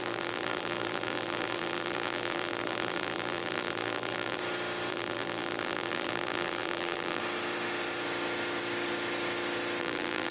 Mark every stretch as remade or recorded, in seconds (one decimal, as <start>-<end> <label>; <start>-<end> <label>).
0.0-4.4 remade; 4.4-4.9 recorded; 4.9-7.2 remade; 7.2-9.8 recorded; 9.8-10.3 remade